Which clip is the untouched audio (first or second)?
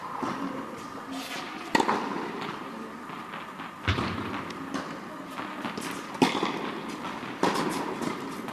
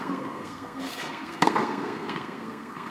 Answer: first